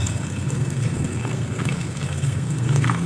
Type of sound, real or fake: fake